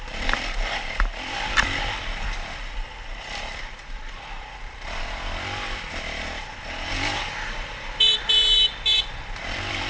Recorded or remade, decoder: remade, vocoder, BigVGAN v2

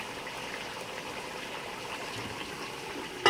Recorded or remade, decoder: recorded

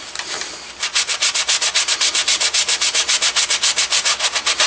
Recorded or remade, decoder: recorded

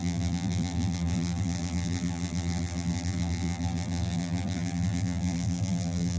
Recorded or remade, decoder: remade, vocoder, BigVGAN v2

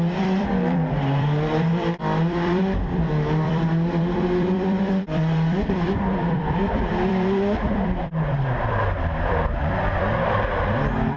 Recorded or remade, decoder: remade, vocoder, BigVGAN v2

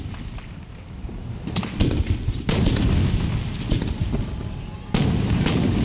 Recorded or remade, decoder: recorded